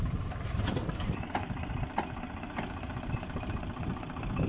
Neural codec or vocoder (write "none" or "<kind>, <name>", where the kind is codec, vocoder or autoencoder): vocoder, BigVGAN v2